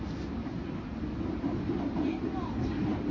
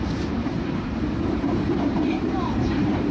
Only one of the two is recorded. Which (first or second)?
first